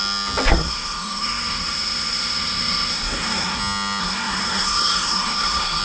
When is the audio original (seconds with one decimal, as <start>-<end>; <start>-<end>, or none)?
0.0-0.5; 3.6-4.0